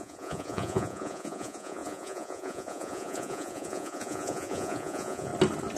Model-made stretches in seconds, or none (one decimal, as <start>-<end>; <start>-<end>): 0.0-5.3